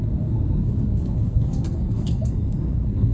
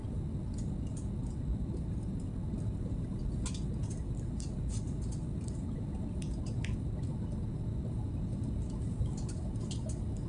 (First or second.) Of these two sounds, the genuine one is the second